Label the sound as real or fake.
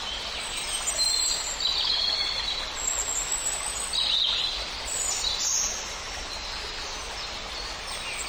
real